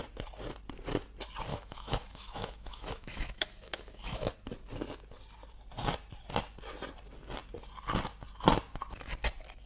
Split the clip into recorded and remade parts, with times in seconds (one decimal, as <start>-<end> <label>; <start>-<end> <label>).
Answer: 0.0-1.5 recorded; 1.5-4.3 remade; 4.3-9.7 recorded